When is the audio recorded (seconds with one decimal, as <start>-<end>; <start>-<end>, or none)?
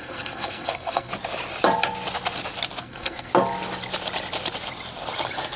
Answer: 1.1-2.8; 3.3-5.6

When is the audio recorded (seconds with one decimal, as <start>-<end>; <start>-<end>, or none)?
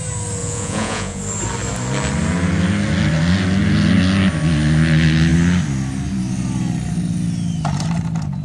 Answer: 0.0-0.4; 1.2-8.4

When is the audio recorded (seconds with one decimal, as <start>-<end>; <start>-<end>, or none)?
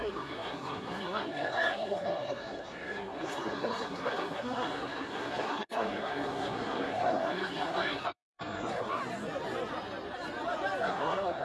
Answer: 9.0-10.8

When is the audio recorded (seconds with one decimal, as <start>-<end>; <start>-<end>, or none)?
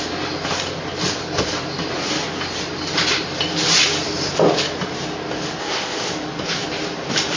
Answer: 0.0-5.6; 6.1-7.4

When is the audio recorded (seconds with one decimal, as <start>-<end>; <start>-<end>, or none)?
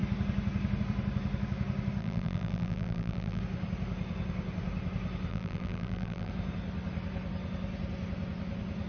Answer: 0.0-2.0; 3.4-5.3; 6.3-8.9